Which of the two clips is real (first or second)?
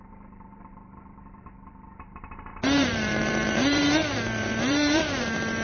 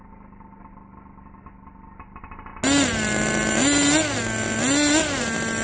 second